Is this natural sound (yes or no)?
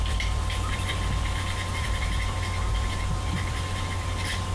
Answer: no